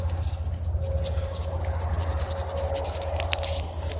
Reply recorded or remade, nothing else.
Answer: recorded